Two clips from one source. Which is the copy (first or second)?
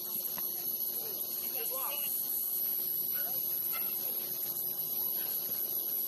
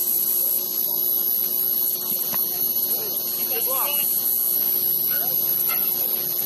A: first